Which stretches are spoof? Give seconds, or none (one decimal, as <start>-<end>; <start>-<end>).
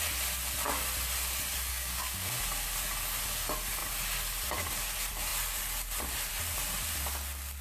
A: 1.7-2.3